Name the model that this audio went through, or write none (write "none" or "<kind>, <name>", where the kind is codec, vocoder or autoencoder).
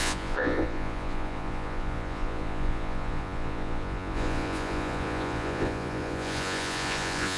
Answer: vocoder, Vocos